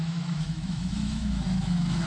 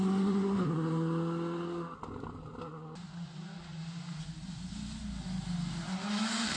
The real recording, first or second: second